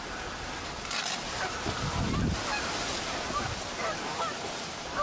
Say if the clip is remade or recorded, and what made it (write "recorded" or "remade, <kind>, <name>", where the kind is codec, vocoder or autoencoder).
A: recorded